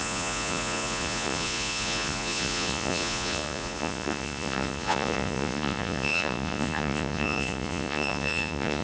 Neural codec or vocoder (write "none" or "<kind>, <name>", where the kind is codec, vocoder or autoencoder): vocoder, Vocos